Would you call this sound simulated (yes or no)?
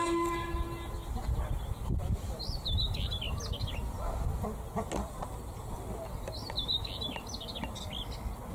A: no